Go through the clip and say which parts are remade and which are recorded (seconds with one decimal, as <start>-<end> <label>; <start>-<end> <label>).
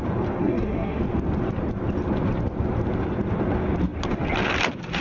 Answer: 0.0-0.4 recorded; 0.4-1.0 remade; 1.0-5.0 recorded